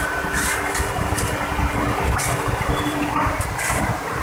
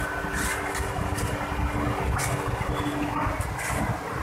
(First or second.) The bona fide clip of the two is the second